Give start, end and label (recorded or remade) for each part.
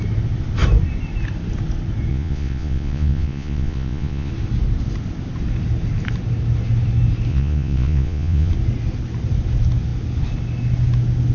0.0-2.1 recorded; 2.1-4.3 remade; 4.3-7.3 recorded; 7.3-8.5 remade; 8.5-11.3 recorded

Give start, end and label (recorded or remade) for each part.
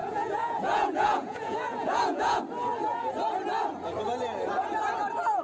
0.0-2.4 remade; 2.4-5.4 recorded